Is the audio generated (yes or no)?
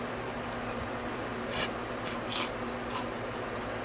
no